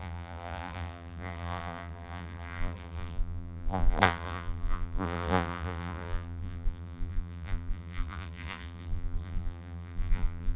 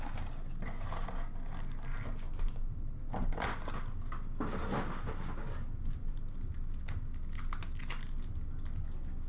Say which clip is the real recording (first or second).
second